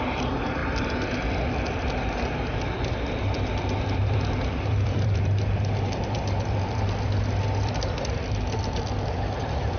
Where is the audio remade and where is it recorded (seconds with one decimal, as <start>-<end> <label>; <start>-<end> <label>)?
0.0-0.6 remade; 0.6-2.9 recorded; 2.9-9.8 remade